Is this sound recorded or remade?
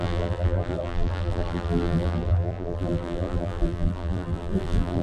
remade